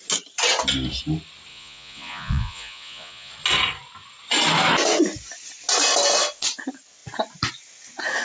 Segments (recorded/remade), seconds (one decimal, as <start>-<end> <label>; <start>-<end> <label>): 0.0-1.5 recorded; 1.5-3.3 remade; 3.3-8.2 recorded